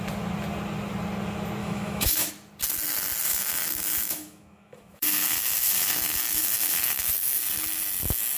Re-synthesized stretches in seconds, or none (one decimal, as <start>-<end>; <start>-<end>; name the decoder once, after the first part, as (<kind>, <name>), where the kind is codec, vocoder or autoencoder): 1.6-2.3 (autoencoder, DAC-VAE); 3.3-7.4

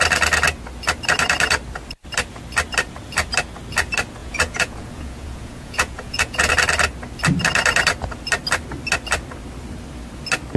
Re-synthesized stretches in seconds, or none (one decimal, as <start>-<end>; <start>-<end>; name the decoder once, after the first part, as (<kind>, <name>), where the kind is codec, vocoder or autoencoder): 4.2-6.5 (vocoder, Vocos)

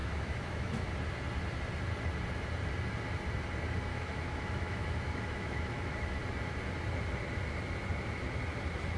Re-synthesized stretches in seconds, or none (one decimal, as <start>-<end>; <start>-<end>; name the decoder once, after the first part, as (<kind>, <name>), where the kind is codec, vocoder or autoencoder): 0.0-0.9 (autoencoder, DAC-VAE); 3.9-6.2

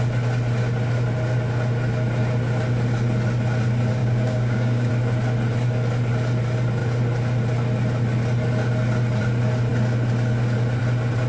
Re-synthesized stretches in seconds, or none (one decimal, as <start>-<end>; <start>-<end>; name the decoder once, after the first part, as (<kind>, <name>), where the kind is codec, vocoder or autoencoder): 4.0-4.9 (codec, DAC)

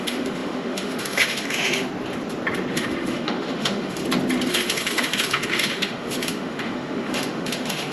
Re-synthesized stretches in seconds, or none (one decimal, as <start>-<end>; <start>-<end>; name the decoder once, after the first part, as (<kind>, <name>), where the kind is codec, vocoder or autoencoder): 0.0-1.9 (autoencoder, DAC-VAE); 2.7-4.0; 4.5-7.9